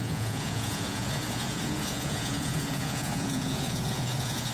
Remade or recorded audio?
remade